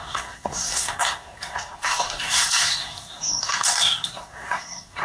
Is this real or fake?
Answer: fake